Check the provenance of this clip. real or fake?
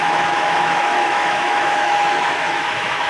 fake